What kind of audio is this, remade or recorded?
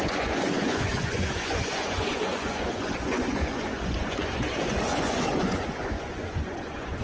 remade